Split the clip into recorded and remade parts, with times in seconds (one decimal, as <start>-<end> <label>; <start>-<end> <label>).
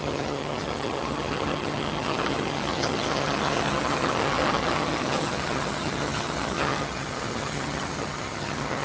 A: 0.0-8.8 remade